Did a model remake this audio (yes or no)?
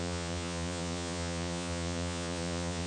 yes